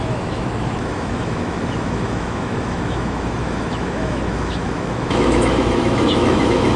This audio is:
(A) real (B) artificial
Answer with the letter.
B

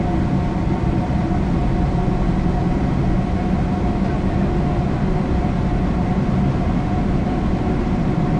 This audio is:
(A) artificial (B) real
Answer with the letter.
B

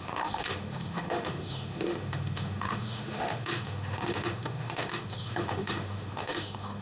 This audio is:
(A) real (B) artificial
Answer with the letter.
B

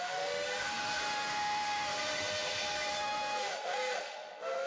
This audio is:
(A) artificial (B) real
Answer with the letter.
A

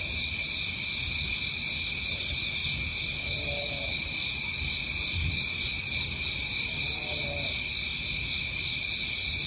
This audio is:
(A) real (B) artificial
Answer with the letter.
A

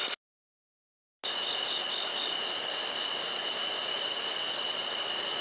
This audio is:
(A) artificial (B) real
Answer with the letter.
B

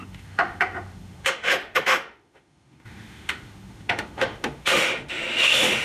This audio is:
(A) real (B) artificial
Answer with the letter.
B